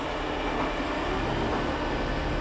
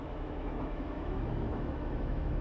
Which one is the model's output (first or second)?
second